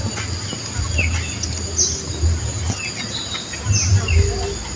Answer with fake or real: real